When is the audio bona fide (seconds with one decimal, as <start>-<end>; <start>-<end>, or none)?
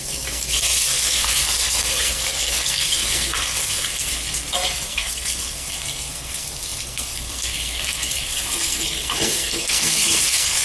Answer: none